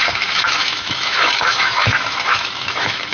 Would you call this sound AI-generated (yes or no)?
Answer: yes